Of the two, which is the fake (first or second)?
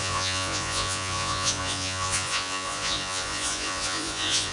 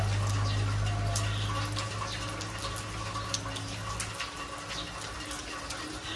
first